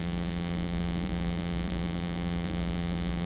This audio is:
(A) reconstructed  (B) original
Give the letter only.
A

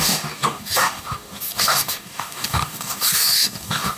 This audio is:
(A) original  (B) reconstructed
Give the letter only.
B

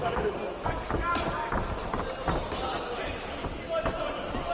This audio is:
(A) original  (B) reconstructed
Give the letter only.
A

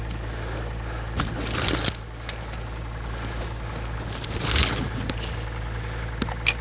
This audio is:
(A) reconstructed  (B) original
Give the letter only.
B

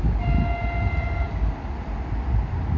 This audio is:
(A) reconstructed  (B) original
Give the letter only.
B